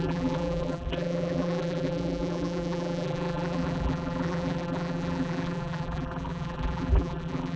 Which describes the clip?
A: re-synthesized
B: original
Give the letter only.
A